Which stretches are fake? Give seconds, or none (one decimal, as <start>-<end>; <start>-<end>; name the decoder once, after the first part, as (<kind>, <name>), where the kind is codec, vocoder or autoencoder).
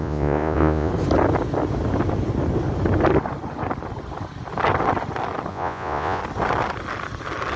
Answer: 0.0-0.9 (vocoder, Vocos); 5.5-6.2